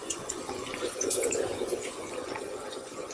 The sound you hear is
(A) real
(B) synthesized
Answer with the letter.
B